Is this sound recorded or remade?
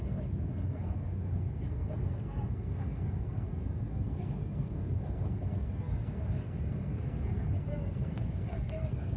remade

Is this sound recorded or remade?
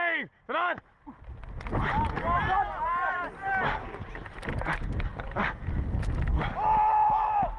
recorded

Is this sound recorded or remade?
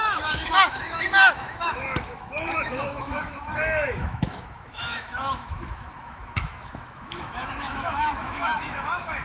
remade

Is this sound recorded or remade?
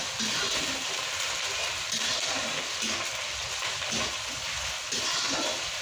recorded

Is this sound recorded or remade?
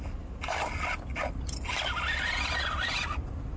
recorded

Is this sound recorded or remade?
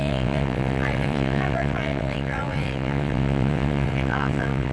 remade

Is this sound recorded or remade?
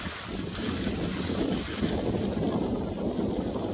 recorded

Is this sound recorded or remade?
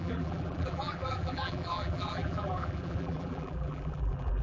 remade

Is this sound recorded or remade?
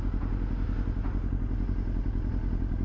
recorded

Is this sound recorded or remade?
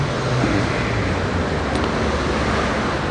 recorded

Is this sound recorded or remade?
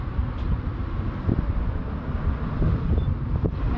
recorded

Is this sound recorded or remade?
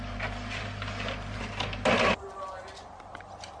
recorded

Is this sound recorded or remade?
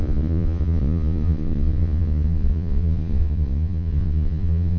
remade